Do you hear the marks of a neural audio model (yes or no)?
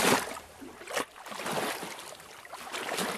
no